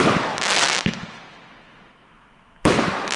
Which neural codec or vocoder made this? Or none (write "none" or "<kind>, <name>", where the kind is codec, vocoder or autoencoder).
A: autoencoder, DAC-VAE